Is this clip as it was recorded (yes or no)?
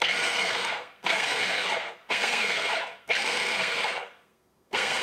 no